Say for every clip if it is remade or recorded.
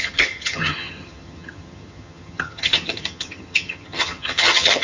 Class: remade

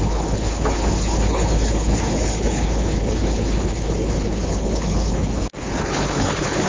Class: remade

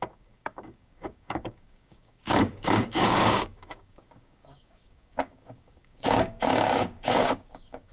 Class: remade